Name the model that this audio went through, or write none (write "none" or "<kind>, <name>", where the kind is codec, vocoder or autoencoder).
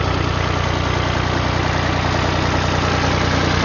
none